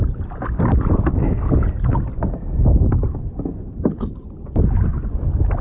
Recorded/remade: recorded